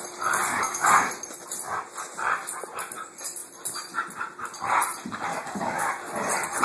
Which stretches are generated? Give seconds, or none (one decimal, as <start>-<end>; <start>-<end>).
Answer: 0.5-1.1; 5.3-5.9